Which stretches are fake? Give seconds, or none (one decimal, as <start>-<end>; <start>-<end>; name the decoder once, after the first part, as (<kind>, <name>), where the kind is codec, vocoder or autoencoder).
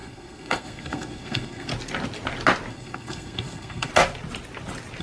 0.0-1.7 (codec, SNAC); 2.7-3.9